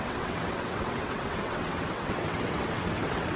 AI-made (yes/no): yes